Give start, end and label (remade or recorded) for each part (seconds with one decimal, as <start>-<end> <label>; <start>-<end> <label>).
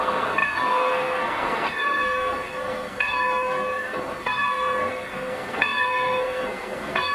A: 0.0-7.1 remade